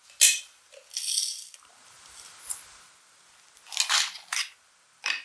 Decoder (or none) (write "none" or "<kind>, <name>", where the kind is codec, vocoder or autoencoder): none